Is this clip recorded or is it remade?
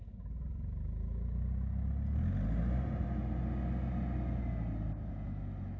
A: recorded